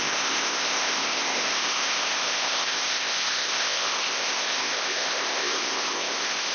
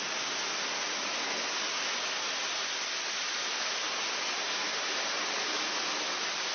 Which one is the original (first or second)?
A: second